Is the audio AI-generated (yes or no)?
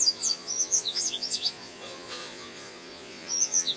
yes